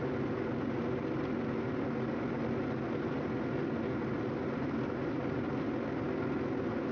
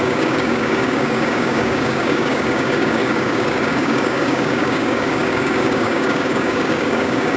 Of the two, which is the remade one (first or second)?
second